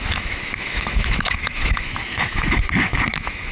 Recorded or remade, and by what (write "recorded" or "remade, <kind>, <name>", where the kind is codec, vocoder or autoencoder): remade, autoencoder, DAC-VAE